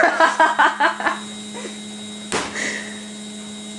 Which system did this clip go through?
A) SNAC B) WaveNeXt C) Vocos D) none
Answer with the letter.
D